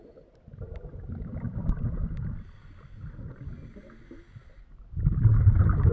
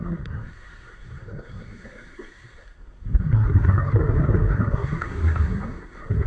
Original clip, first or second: first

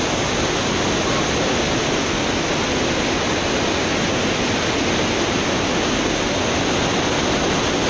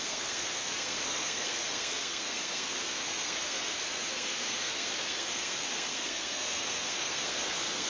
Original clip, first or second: first